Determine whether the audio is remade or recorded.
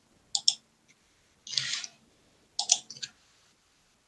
recorded